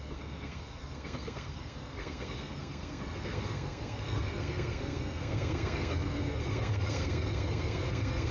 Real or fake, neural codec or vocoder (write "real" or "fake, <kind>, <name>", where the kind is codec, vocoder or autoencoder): fake, codec, SNAC